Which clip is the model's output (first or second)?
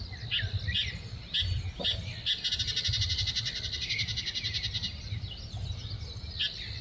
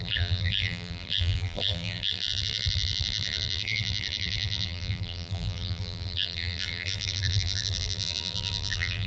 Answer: second